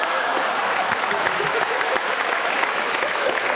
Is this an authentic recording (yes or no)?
no